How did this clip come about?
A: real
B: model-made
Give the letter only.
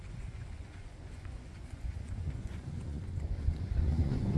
B